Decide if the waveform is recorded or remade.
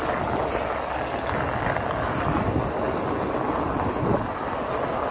recorded